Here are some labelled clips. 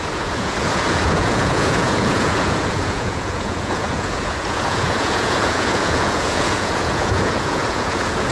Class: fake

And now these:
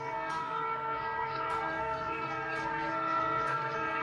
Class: fake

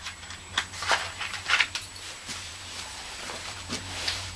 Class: fake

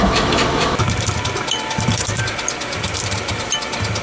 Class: fake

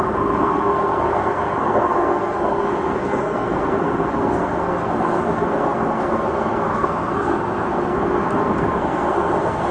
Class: fake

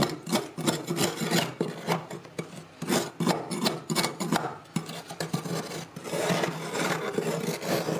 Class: real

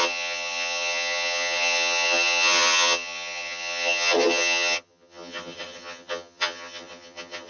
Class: fake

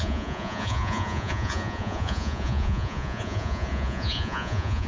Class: fake